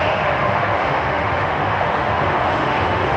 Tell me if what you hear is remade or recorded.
remade